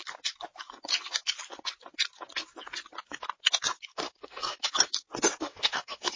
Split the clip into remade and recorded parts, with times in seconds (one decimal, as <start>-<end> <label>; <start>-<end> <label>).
0.0-3.9 recorded; 3.9-4.7 remade; 4.7-5.5 recorded; 5.5-6.2 remade